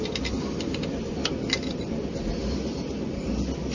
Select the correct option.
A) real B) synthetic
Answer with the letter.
A